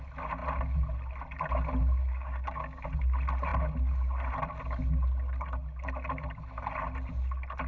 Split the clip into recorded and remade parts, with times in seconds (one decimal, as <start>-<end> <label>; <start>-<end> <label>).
0.0-2.0 recorded; 2.0-2.8 remade; 2.8-7.7 recorded